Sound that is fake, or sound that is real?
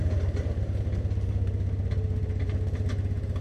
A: real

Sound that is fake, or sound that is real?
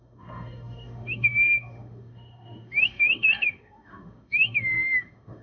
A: fake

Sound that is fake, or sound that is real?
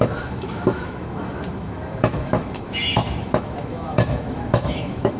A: fake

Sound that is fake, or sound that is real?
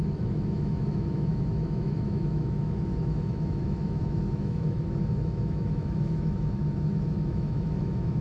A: fake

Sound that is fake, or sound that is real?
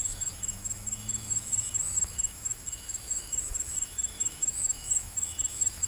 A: fake